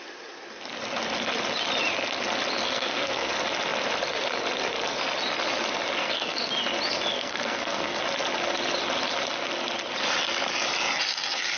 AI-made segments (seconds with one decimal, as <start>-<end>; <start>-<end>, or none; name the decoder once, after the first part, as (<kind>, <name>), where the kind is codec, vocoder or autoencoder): 2.6-3.3 (codec, SNAC); 6.0-6.5; 7.1-8.0